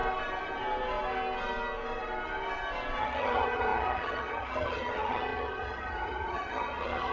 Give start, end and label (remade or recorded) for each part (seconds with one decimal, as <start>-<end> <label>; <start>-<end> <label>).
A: 0.0-3.0 recorded; 3.0-7.1 remade